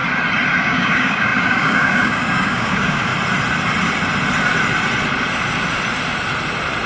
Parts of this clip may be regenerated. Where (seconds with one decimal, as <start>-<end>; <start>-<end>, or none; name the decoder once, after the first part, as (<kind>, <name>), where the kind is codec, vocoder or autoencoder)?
0.6-3.1 (codec, DAC)